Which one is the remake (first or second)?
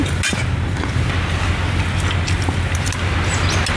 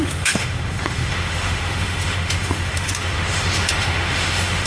second